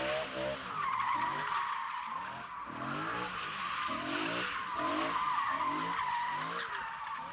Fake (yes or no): no